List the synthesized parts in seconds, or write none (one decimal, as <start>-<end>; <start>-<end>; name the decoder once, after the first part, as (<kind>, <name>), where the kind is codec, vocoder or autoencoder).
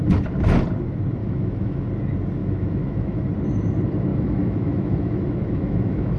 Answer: 1.2-1.9 (autoencoder, DAC-VAE); 2.4-3.2; 4.1-6.2